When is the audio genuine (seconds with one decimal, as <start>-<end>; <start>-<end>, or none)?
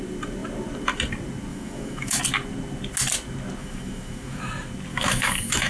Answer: 0.0-1.5; 2.2-3.6; 4.4-4.9